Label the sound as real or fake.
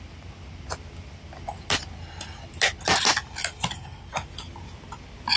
real